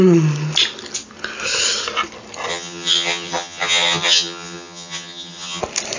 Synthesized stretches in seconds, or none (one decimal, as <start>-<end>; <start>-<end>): 2.5-5.6